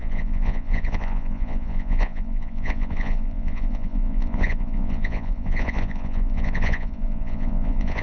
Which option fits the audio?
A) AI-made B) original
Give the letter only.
A